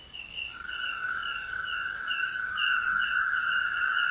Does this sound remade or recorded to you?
remade